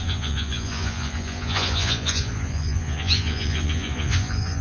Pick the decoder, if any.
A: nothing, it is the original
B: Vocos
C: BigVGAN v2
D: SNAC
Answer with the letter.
B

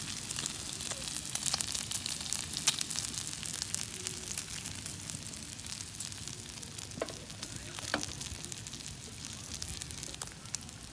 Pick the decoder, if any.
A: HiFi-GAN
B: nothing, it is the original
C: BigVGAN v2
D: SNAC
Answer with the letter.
B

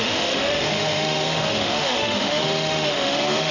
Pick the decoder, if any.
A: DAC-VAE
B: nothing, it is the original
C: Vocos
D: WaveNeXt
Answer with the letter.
A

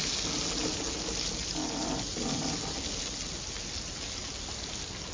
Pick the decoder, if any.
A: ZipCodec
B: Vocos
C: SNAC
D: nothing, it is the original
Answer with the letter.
D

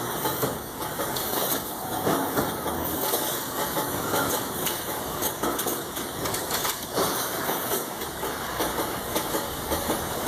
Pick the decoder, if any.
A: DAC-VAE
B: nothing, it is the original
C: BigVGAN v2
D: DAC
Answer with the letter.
D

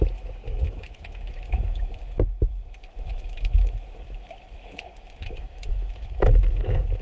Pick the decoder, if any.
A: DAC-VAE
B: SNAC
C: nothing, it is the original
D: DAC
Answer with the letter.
A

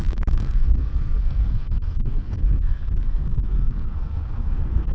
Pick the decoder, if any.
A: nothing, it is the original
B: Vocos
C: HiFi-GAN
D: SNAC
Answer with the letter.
D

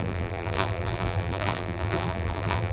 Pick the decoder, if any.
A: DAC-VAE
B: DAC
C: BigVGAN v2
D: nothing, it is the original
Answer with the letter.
C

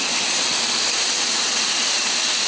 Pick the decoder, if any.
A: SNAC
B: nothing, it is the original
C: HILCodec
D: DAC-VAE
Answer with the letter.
B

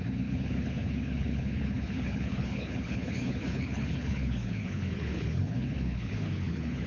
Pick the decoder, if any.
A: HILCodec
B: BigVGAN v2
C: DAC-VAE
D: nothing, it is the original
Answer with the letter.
A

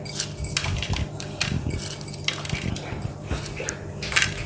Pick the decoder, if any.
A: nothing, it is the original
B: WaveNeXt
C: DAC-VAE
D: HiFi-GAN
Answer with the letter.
A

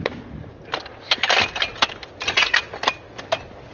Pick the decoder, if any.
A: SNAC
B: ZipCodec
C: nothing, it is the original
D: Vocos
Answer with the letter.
C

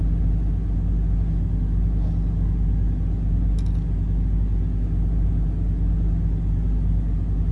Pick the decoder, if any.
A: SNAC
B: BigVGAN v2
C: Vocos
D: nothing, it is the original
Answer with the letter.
D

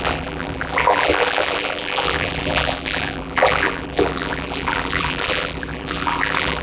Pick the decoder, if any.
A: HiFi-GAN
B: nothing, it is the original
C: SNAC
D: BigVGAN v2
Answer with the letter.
D